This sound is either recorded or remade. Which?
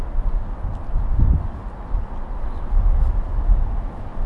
recorded